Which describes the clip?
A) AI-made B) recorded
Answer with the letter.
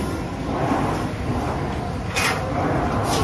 B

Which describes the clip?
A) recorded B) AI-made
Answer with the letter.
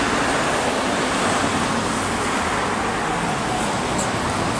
A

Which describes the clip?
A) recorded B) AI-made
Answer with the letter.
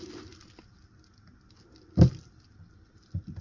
A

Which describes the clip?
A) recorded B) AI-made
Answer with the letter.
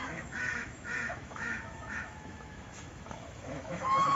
B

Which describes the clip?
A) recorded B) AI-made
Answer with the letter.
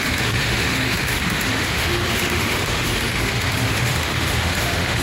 B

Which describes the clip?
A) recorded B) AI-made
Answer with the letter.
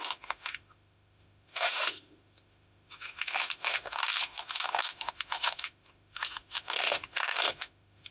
B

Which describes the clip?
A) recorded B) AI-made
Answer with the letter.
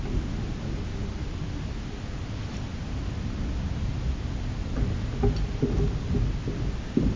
A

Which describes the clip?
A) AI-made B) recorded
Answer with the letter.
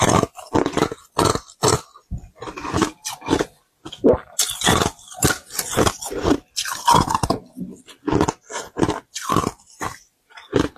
B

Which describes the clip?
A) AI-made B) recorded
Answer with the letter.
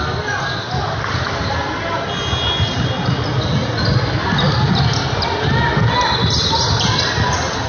B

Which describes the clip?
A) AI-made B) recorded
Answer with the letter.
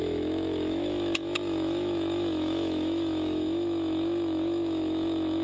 A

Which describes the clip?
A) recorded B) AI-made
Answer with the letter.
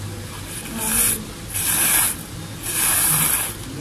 A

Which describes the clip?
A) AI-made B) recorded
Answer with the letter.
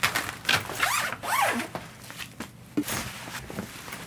B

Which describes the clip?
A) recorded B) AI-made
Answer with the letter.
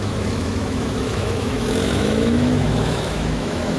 B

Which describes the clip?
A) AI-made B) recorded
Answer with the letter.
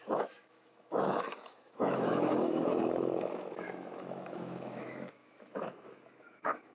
A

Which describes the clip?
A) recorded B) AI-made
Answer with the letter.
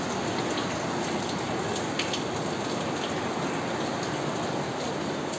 A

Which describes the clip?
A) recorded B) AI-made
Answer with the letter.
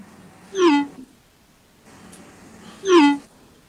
A